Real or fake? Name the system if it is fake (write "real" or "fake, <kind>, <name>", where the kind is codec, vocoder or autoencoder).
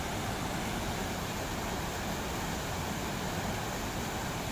real